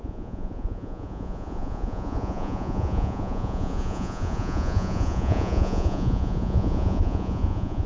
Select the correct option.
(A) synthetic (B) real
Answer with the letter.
A